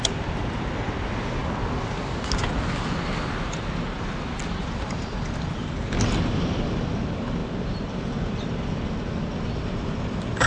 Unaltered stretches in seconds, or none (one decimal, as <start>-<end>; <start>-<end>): 0.0-7.4; 8.3-10.5